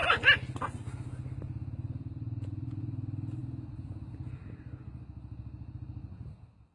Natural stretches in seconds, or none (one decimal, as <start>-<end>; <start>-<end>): 0.0-6.7